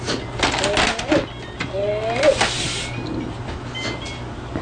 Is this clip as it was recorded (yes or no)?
yes